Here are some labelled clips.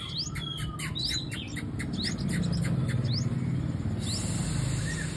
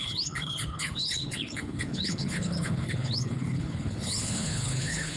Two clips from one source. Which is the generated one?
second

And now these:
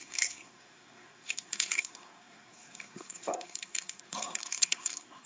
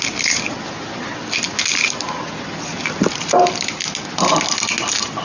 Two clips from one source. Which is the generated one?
first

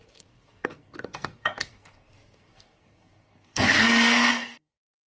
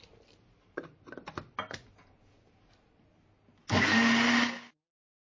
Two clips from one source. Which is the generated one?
first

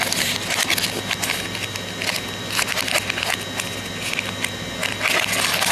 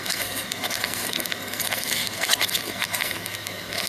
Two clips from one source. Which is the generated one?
second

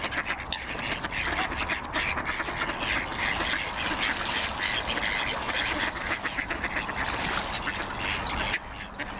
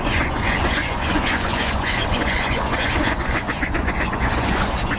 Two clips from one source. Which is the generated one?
second